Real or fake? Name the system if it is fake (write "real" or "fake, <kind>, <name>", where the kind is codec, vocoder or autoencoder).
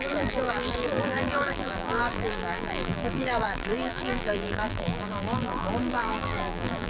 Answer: fake, vocoder, BigVGAN v2